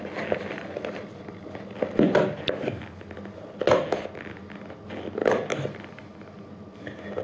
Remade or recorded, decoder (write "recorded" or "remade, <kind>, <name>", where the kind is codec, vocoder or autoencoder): recorded